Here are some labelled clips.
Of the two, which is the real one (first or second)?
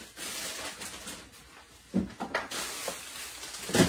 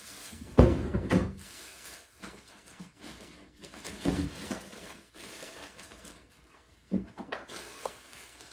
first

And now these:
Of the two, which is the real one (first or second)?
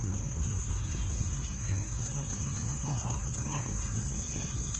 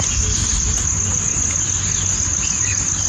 second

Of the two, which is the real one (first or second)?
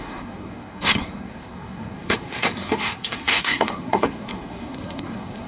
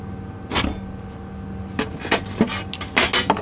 second